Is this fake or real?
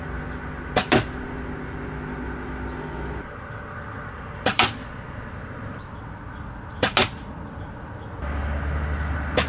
real